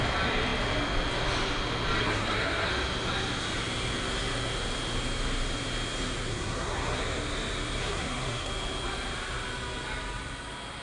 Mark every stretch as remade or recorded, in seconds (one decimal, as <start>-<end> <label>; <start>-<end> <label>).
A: 0.0-2.0 recorded; 2.0-2.7 remade; 2.7-6.3 recorded; 6.3-7.0 remade; 7.0-7.8 recorded; 7.8-8.5 remade; 8.5-10.8 recorded